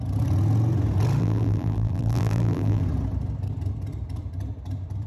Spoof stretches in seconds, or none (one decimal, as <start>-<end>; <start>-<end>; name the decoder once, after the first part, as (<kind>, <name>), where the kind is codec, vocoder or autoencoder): 1.2-2.8 (vocoder, BigVGAN v2)